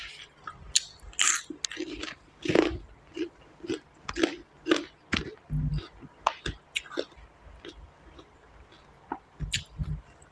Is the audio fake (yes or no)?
no